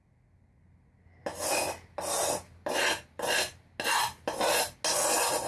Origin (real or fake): real